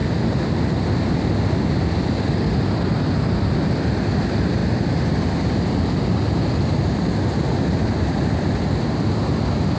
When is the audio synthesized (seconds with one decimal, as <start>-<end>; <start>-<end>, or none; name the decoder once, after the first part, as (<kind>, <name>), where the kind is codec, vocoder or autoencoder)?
none